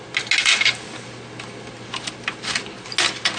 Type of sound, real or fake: real